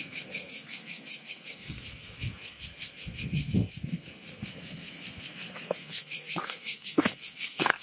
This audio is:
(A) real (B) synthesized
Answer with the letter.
B